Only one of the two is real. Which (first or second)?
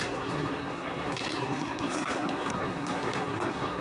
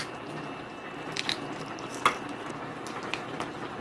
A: second